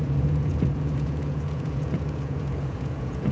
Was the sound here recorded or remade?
remade